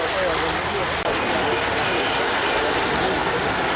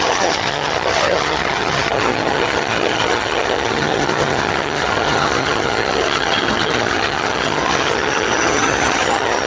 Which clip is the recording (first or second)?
first